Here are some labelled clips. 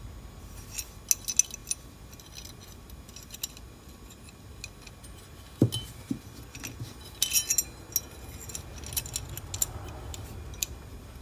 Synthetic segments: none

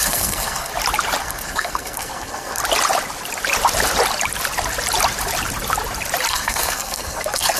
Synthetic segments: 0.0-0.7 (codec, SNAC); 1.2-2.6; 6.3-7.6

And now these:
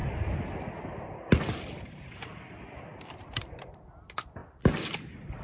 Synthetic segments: 3.2-5.4 (vocoder, BigVGAN v2)

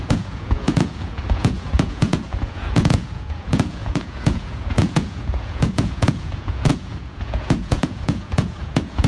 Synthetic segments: 0.0-9.1 (vocoder, Vocos)

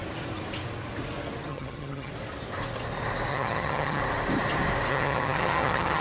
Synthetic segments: 1.5-2.1 (vocoder, HiFi-GAN); 3.3-4.0; 4.9-6.0

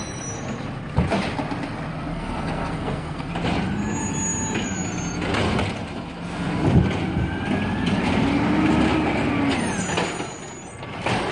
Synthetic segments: 2.1-3.3 (codec, SNAC)

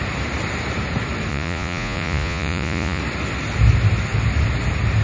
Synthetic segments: 1.3-3.0 (vocoder, Vocos)

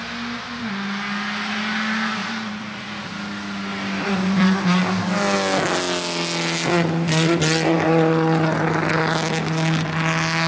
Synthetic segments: 2.2-3.0 (vocoder, BigVGAN v2); 3.7-4.8